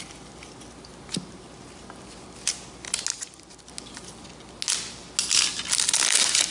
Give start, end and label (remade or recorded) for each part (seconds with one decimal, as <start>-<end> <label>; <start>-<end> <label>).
0.0-6.5 recorded